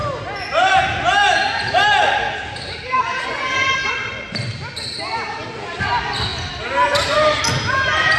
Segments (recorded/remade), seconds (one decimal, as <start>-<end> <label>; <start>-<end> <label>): 0.0-8.2 recorded